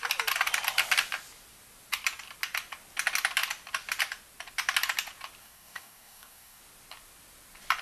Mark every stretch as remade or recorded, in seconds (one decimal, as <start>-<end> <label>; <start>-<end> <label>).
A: 0.0-5.4 recorded; 5.4-6.6 remade; 6.6-7.8 recorded